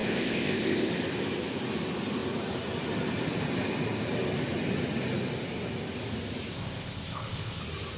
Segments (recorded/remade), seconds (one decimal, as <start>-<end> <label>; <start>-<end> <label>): 0.0-0.9 remade; 0.9-6.5 recorded; 6.5-7.6 remade; 7.6-8.0 recorded